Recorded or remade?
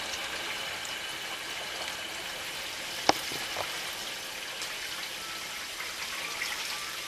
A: recorded